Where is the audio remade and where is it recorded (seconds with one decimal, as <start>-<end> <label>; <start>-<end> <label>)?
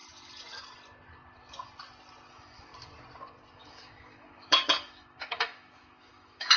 0.0-2.3 recorded; 2.3-2.7 remade; 2.7-3.5 recorded; 3.5-6.6 remade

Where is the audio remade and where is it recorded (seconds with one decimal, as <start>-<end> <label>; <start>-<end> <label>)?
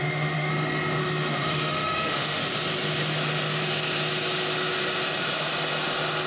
0.0-0.5 remade; 0.5-1.0 recorded; 1.0-2.4 remade; 2.4-6.3 recorded